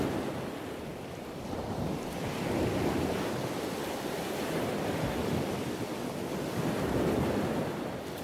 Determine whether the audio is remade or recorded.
recorded